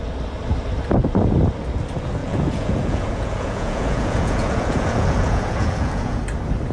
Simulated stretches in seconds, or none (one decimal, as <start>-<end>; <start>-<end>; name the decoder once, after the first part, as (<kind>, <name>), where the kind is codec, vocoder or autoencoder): 2.2-6.2 (vocoder, Vocos)